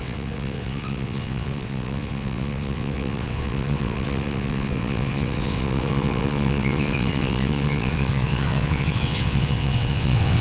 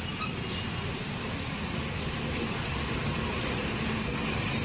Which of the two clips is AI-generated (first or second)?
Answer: first